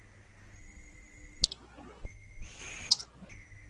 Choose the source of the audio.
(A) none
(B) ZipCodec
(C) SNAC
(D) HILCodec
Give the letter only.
A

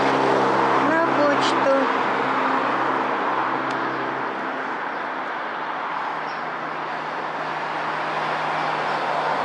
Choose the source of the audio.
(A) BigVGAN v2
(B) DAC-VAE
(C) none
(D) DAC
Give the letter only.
C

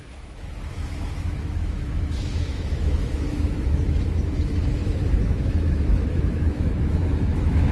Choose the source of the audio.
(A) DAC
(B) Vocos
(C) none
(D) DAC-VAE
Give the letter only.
D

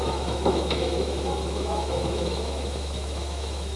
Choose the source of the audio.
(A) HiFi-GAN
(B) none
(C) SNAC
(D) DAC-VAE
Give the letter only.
D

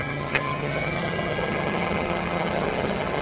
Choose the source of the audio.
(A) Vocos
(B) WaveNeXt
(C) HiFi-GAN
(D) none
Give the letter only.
C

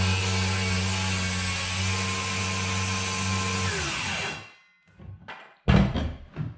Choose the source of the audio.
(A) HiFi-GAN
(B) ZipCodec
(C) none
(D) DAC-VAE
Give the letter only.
C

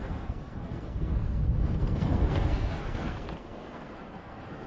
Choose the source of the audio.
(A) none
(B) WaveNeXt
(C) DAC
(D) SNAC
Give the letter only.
D